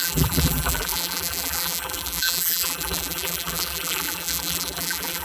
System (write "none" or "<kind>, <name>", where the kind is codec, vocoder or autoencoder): vocoder, BigVGAN v2